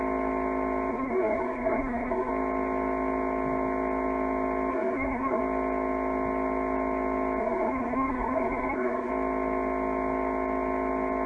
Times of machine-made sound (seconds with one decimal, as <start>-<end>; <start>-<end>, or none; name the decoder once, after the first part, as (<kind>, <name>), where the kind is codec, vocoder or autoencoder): 0.9-2.3 (codec, SNAC); 4.7-5.4; 7.4-9.1